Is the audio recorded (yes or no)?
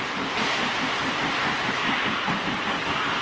yes